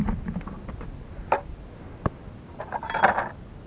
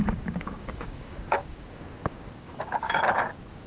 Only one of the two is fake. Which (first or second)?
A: second